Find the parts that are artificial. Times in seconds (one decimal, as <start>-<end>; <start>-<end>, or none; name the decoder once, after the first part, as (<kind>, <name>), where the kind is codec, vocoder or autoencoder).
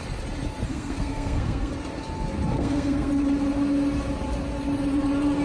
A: 0.7-1.7 (codec, SNAC); 2.5-3.1